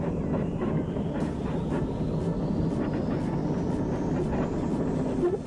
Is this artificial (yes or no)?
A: no